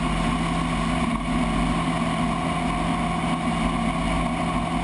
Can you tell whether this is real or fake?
real